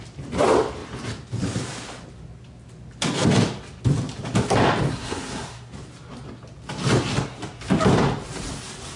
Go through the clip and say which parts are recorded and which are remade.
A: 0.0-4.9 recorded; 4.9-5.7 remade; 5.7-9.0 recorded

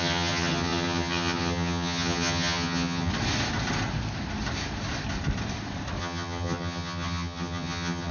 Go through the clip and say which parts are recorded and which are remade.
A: 0.0-3.1 remade; 3.1-6.0 recorded; 6.0-8.1 remade

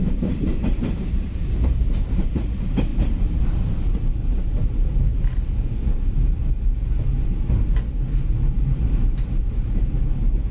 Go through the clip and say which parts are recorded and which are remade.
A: 0.0-6.4 remade; 6.4-7.9 recorded; 7.9-10.5 remade

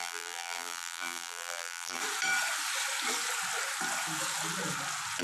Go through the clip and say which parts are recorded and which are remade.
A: 0.0-2.0 remade; 2.0-5.2 recorded

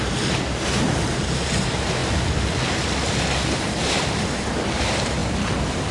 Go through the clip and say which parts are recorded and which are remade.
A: 0.0-2.0 remade; 2.0-4.2 recorded; 4.2-5.9 remade